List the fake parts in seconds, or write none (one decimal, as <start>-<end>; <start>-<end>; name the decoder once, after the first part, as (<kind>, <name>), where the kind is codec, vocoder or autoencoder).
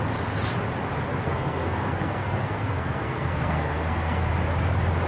1.2-4.3 (codec, SNAC)